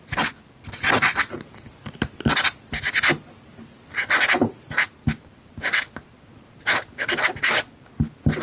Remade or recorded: recorded